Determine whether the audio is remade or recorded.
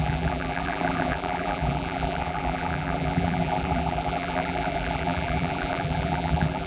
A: remade